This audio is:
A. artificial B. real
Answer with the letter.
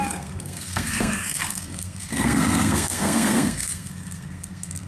A